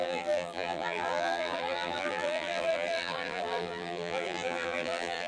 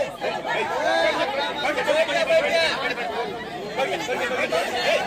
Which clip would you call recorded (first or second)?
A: second